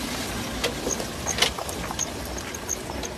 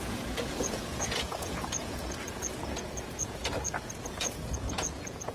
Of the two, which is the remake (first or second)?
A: second